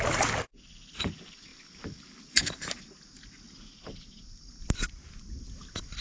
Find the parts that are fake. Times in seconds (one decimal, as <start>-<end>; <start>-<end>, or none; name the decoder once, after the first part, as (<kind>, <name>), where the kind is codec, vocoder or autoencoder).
none